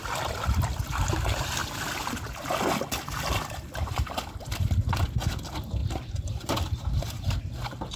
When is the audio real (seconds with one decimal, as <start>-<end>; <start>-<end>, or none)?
0.0-5.8; 7.4-8.0